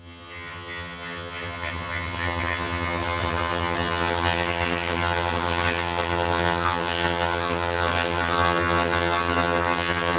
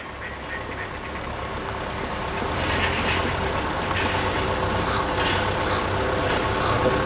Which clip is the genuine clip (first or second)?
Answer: second